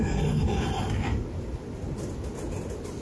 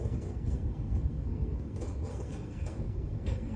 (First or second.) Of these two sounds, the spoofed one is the second